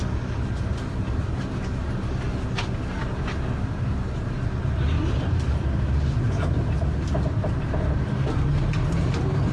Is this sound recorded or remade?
recorded